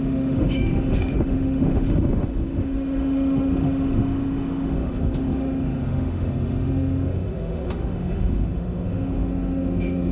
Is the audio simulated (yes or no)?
yes